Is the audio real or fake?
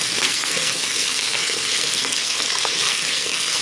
fake